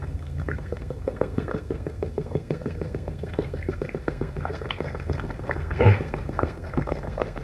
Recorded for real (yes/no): no